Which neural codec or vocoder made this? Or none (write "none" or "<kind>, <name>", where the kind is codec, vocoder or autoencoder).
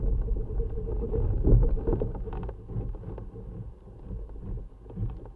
none